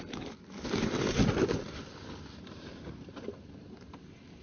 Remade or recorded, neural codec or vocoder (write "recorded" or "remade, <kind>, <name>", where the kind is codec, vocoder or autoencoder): recorded